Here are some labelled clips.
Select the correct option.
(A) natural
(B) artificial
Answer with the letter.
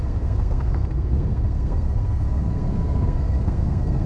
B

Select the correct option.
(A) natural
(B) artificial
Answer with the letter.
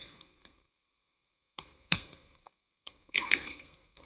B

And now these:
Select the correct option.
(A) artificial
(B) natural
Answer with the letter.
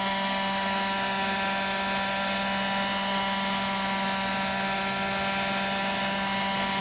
B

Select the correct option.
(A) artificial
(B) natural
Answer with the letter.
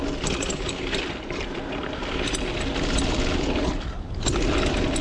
B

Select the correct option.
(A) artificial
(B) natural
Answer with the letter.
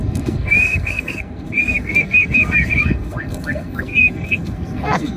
A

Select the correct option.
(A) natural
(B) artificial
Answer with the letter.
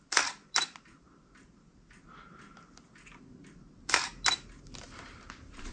A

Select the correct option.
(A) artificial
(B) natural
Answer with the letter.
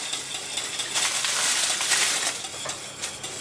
B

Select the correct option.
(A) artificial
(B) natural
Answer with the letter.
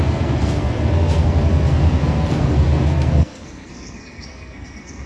A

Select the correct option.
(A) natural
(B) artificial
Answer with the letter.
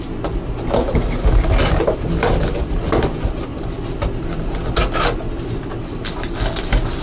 A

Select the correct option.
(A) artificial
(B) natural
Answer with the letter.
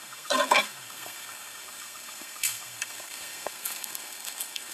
A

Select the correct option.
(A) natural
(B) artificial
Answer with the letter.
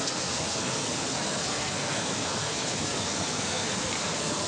B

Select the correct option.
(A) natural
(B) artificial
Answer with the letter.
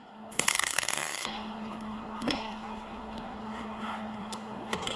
B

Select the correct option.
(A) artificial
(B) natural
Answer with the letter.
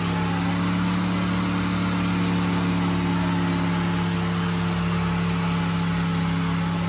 B